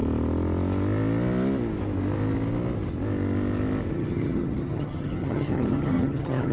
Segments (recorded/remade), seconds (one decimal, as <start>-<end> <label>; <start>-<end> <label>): 0.0-3.9 recorded; 3.9-6.5 remade